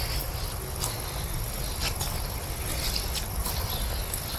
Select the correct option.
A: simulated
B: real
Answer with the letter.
B